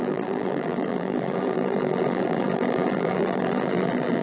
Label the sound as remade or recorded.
remade